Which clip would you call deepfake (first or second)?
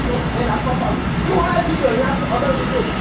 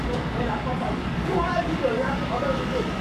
second